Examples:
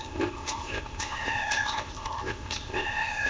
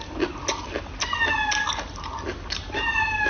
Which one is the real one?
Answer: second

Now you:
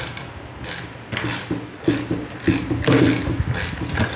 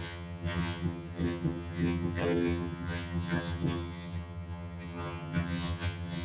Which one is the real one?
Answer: first